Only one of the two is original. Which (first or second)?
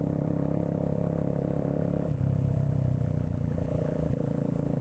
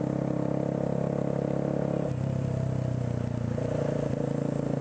second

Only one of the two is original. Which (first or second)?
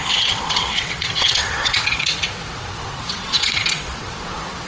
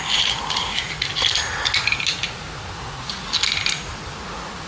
second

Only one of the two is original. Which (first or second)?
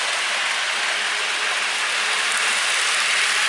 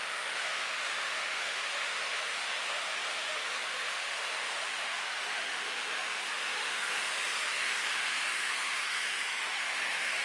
first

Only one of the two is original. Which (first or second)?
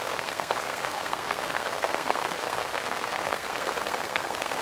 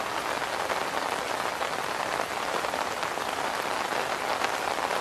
second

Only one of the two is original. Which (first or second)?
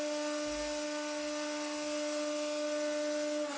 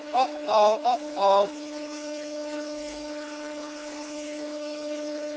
first